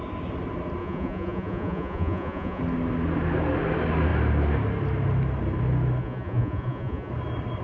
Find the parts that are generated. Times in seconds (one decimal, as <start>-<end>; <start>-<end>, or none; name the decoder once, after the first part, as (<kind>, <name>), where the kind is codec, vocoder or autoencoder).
0.8-2.6 (vocoder, Vocos); 6.0-7.1